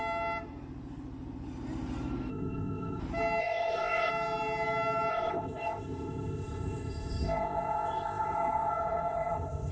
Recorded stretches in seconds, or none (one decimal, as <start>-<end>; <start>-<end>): 0.0-2.3; 3.0-3.4; 4.1-5.1